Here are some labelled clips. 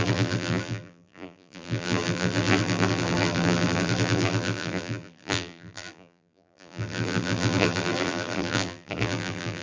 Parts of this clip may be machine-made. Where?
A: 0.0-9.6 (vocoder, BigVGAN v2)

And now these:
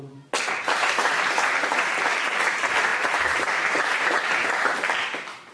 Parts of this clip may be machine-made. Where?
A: 0.6-2.0 (vocoder, BigVGAN v2); 2.9-4.5